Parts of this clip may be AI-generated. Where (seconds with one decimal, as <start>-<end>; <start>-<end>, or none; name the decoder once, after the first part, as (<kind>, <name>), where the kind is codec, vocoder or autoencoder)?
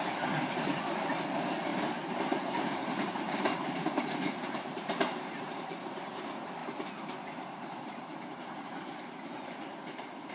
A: 1.7-5.5 (vocoder, BigVGAN v2); 6.6-10.3